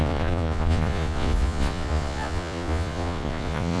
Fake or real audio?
fake